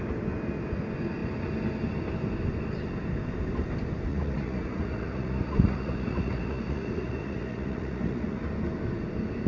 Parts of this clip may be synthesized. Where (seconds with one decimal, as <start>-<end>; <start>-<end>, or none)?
4.1-8.4

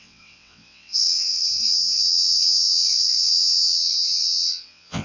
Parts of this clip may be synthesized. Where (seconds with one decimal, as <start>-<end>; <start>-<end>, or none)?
0.0-5.0

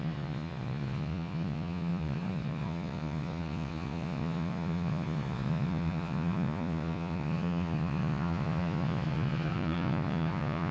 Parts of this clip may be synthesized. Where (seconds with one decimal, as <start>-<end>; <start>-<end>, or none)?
0.0-10.7

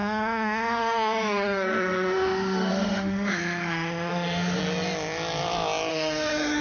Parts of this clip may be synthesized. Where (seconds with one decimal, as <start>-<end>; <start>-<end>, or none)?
0.0-4.6; 5.9-6.6

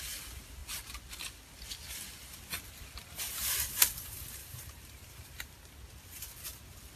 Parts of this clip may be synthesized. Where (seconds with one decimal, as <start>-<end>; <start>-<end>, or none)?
4.4-5.8

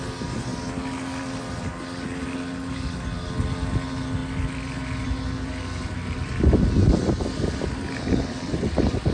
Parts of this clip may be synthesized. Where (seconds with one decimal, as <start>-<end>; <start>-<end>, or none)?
none

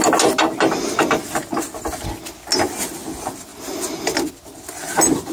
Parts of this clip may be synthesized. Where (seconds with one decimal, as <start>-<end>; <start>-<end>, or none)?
none